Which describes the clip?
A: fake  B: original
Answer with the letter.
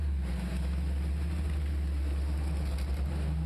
B